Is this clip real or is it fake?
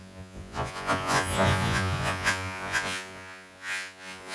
fake